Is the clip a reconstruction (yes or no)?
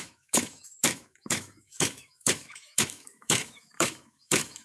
yes